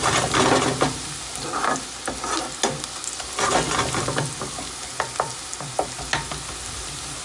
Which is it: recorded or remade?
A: recorded